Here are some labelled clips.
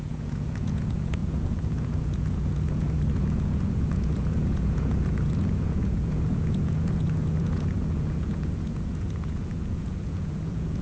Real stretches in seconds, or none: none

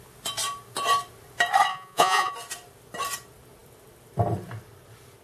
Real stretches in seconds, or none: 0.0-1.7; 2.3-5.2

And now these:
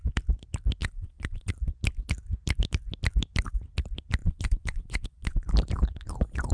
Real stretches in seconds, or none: 0.0-0.8; 1.5-4.2; 5.5-6.5

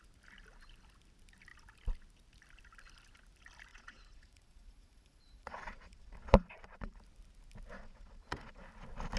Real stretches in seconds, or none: 0.0-3.7; 7.0-7.7; 8.6-9.2

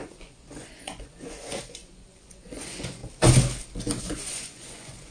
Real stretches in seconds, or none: 3.0-4.0

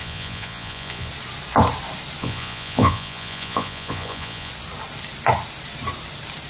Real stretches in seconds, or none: 1.1-2.2; 4.5-6.5

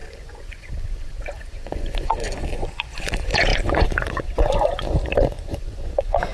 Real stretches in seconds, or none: none

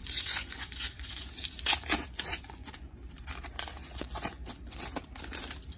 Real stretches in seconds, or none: 1.3-2.3; 3.1-3.8; 4.8-5.8